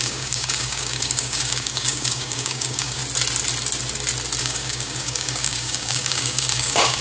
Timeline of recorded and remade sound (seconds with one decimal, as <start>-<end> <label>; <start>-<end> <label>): 0.0-3.0 remade; 3.0-4.4 recorded; 4.4-7.0 remade